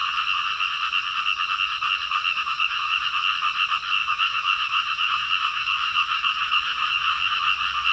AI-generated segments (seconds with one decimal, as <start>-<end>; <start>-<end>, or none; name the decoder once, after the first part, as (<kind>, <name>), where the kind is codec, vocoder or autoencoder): 2.3-3.1 (autoencoder, DAC-VAE); 4.0-7.4